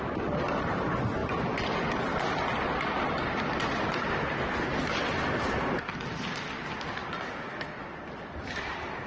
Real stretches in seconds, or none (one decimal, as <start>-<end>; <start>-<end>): 0.0-9.1